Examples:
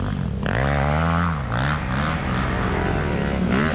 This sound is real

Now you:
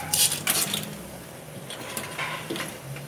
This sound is fake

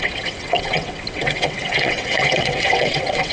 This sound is fake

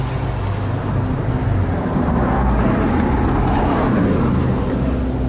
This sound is real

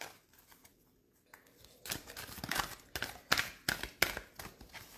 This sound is real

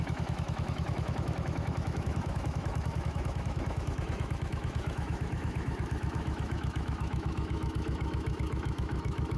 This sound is fake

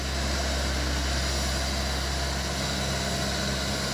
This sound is real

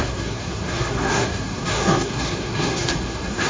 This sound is fake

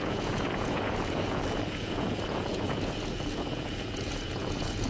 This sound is fake